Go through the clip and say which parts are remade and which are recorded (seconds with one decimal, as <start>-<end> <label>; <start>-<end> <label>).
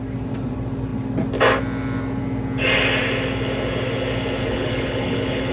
0.0-4.4 recorded; 4.4-5.5 remade